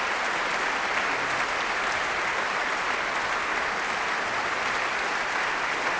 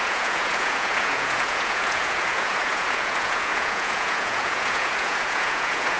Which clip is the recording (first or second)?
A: first